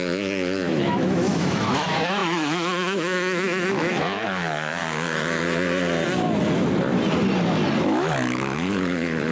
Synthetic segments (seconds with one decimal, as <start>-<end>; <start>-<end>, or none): 0.0-4.8; 7.8-9.3